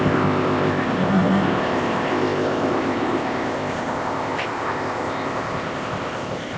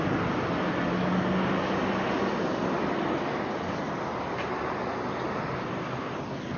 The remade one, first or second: first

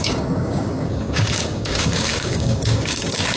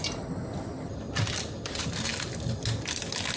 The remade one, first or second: first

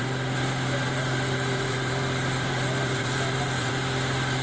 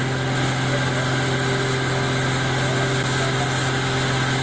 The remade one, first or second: first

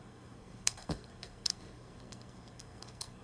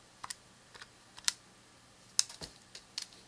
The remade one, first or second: first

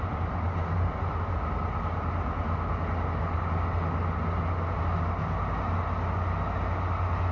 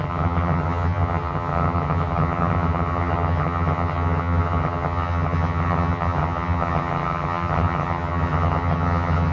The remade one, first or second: second